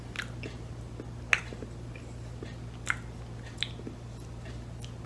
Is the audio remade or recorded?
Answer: recorded